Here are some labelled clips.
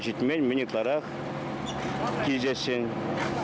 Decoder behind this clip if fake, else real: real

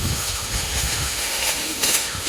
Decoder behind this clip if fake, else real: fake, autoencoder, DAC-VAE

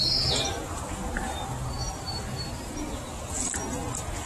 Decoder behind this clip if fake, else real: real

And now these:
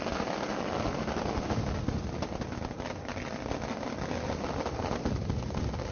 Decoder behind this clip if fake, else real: real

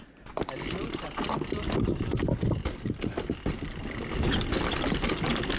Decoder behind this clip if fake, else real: real